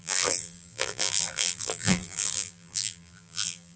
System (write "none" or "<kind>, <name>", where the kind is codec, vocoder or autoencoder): vocoder, BigVGAN v2